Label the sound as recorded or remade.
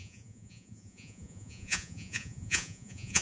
remade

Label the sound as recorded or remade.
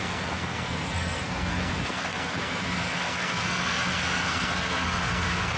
remade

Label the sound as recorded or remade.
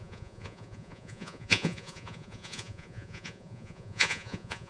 remade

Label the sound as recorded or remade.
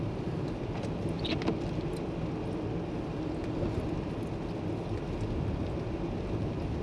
recorded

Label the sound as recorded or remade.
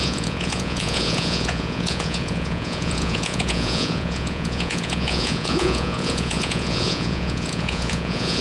remade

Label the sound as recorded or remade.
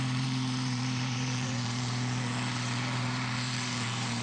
remade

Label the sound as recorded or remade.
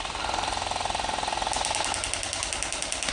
recorded